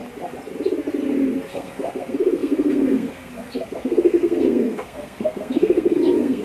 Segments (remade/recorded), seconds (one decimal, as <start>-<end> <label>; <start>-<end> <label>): 0.0-1.5 recorded; 1.5-6.4 remade